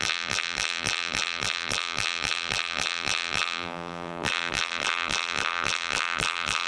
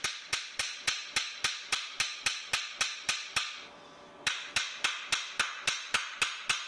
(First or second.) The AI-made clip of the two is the first